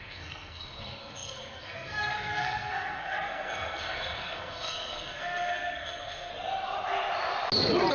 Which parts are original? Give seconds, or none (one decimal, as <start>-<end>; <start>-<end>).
6.3-7.9